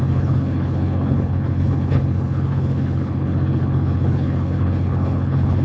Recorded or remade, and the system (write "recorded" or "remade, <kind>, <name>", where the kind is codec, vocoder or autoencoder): remade, codec, HILCodec